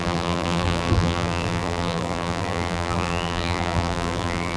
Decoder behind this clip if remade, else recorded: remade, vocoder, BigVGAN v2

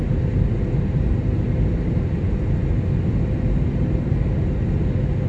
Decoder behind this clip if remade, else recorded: recorded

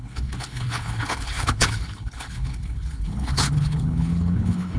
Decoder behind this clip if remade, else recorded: remade, codec, HILCodec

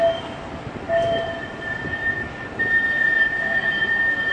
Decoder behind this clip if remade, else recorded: recorded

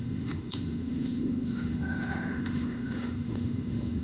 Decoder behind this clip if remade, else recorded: remade, autoencoder, DAC-VAE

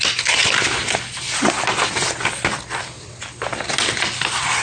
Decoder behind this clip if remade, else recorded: recorded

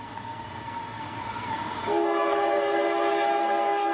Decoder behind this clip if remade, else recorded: remade, codec, SNAC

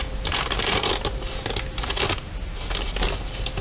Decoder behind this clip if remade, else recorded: recorded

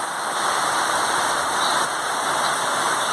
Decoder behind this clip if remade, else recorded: recorded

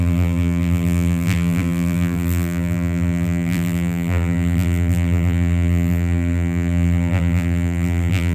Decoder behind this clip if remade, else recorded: remade, vocoder, BigVGAN v2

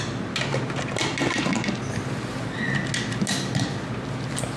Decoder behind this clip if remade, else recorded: recorded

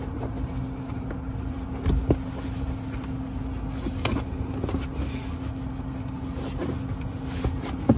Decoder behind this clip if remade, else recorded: recorded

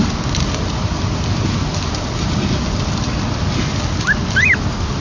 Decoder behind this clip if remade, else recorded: recorded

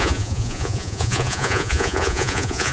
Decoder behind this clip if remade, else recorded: remade, vocoder, Vocos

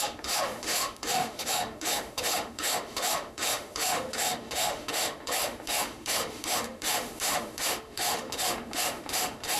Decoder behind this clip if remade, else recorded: remade, autoencoder, DAC-VAE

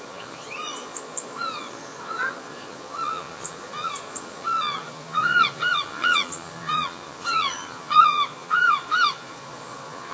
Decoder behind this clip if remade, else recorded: remade, vocoder, Vocos